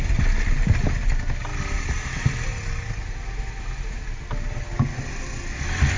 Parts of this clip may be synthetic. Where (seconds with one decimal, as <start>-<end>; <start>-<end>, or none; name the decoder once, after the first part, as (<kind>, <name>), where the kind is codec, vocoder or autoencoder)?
none